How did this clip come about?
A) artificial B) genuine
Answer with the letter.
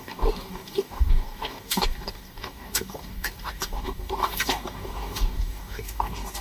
A